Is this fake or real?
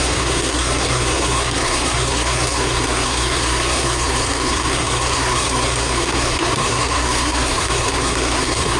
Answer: fake